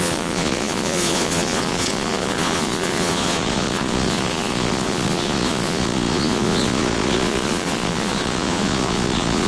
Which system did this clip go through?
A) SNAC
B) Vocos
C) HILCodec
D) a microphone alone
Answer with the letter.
B